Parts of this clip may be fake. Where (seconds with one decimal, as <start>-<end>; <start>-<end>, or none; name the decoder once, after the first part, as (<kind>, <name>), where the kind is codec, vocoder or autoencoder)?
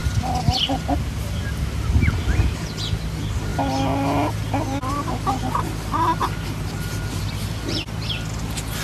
none